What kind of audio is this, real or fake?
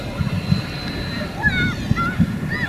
real